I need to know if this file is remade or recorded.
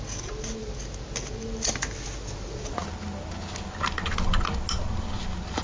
recorded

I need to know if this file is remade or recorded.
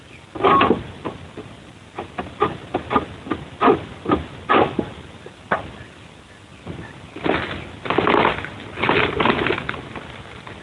recorded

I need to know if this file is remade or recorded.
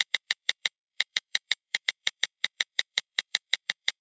remade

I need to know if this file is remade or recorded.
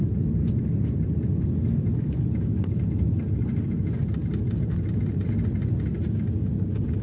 recorded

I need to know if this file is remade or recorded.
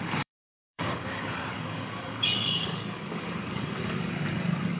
remade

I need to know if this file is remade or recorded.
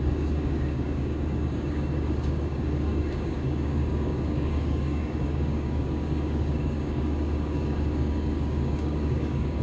remade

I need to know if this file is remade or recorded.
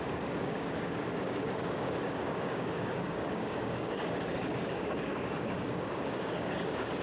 remade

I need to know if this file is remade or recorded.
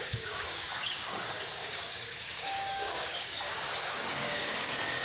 remade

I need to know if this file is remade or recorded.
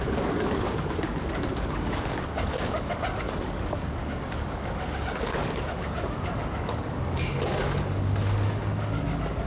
remade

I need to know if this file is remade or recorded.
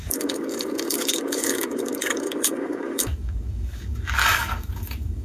remade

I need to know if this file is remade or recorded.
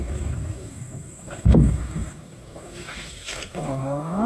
remade